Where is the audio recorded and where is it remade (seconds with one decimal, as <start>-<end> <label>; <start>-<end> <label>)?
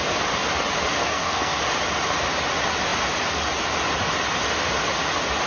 0.0-1.0 recorded; 1.0-1.6 remade; 1.6-5.5 recorded